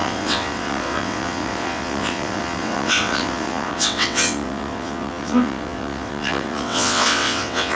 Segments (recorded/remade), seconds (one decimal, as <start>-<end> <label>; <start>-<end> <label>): 0.0-7.8 remade